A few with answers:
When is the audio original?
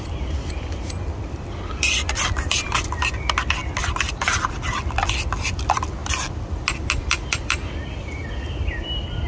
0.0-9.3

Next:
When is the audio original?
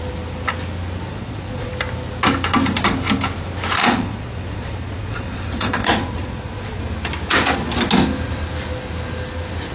0.0-1.1; 1.7-3.8; 6.8-9.7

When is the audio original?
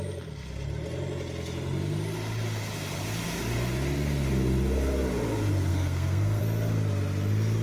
0.0-5.7; 6.4-7.6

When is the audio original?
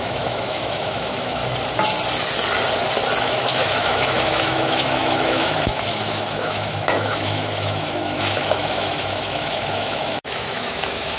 1.4-3.2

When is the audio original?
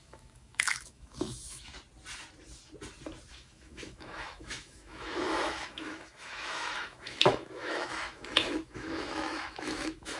1.7-3.3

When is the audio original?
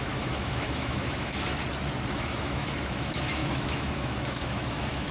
1.6-2.1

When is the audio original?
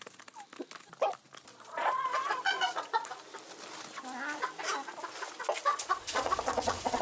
0.0-1.5; 3.1-5.7